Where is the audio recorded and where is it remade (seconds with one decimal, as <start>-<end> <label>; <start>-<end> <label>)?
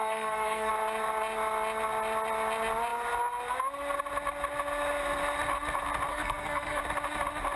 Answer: 0.0-0.7 remade; 0.7-6.1 recorded; 6.1-6.8 remade; 6.8-7.6 recorded